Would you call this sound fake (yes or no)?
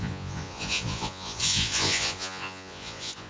yes